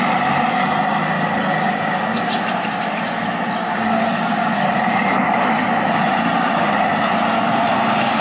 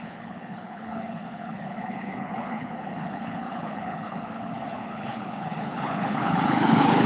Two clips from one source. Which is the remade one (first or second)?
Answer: second